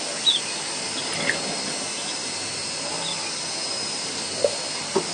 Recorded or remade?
recorded